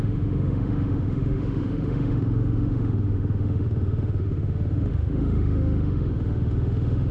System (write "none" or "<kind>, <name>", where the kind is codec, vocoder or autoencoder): autoencoder, DAC-VAE